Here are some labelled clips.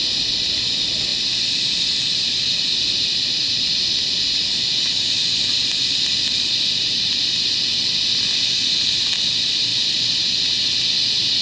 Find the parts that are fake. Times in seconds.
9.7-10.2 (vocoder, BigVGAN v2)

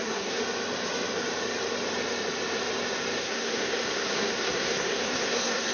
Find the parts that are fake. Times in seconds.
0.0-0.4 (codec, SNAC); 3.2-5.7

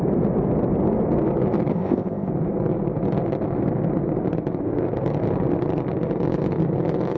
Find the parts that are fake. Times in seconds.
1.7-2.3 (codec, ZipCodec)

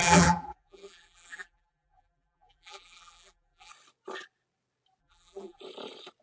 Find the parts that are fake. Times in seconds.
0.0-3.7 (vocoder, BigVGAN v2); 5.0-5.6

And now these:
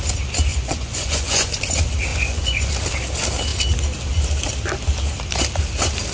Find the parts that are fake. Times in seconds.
0.5-1.5 (vocoder, Vocos); 2.1-2.7

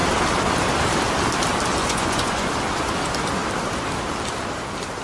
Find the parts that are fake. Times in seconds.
1.8-2.5 (vocoder, Vocos)

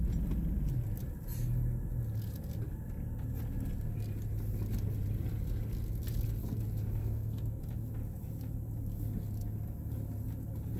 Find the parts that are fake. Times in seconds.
7.0-7.6 (codec, SNAC)